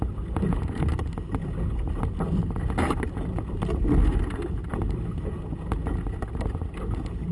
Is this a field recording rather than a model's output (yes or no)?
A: yes